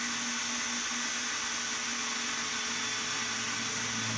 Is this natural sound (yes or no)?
yes